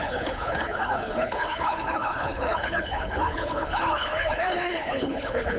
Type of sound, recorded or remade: remade